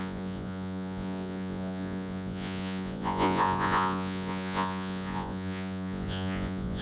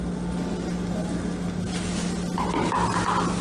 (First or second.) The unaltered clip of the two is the second